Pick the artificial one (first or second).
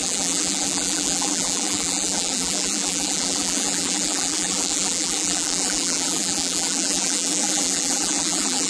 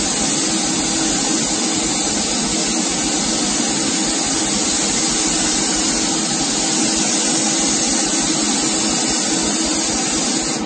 first